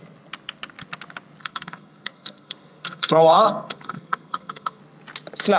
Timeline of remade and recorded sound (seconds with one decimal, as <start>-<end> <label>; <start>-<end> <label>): 0.0-1.4 recorded; 1.4-4.8 remade; 4.8-5.6 recorded